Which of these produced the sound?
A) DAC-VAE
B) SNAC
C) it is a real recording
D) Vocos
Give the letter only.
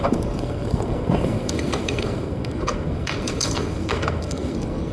B